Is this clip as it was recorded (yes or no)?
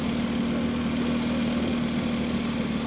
yes